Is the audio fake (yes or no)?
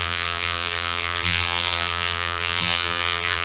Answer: yes